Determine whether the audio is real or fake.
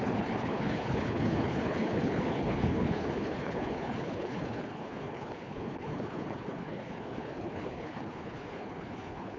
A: fake